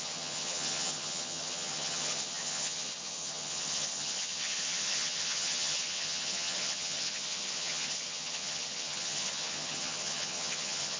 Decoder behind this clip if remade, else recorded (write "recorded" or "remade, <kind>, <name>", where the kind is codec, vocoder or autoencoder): remade, vocoder, HiFi-GAN